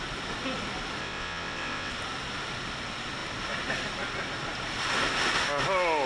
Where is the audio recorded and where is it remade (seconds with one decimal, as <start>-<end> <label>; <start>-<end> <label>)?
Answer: 0.0-1.0 recorded; 1.0-1.9 remade; 1.9-6.1 recorded

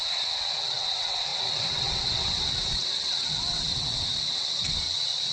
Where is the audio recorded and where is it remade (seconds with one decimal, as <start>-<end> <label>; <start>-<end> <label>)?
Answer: 0.0-5.3 remade

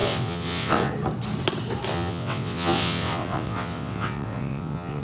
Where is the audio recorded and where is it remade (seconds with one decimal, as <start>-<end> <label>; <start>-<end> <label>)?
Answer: 0.0-0.9 remade; 0.9-1.9 recorded; 1.9-5.0 remade

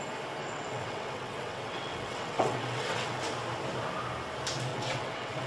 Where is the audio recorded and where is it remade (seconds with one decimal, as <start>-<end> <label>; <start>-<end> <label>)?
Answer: 0.0-0.4 recorded; 0.4-3.2 remade; 3.2-4.7 recorded; 4.7-5.5 remade

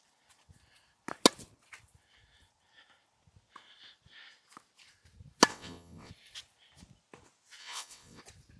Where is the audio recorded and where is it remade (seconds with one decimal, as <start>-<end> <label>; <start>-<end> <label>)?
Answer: 0.0-5.5 recorded; 5.5-6.1 remade; 6.1-7.6 recorded; 7.6-8.2 remade; 8.2-8.6 recorded

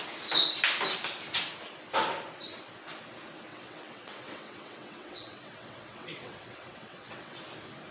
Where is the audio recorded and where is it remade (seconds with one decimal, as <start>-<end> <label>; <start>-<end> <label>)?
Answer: 0.0-3.5 recorded; 3.5-7.4 remade; 7.4-7.9 recorded

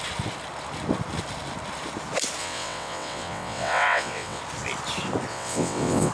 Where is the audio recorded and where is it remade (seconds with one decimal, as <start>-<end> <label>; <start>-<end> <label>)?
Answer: 0.0-2.4 recorded; 2.4-4.4 remade; 4.4-5.3 recorded; 5.3-6.1 remade

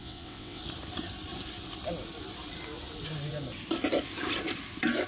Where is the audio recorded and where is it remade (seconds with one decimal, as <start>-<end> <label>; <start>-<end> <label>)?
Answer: 0.0-0.6 remade; 0.6-5.1 recorded